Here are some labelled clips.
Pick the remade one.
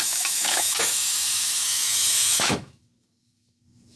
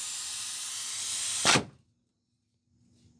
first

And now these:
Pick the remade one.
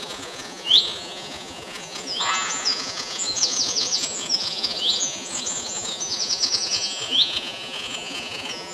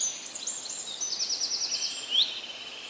first